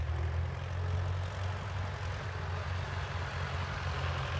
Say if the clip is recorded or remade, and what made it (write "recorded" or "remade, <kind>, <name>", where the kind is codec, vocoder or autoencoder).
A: recorded